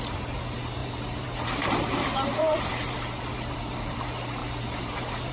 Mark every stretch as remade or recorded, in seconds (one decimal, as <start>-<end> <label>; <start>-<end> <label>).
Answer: 0.0-0.8 recorded; 0.8-4.0 remade; 4.0-4.4 recorded; 4.4-5.3 remade